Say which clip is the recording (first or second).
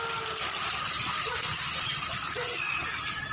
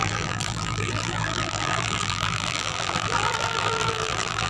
first